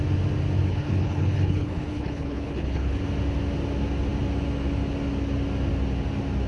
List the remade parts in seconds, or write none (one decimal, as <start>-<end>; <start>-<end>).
0.7-3.0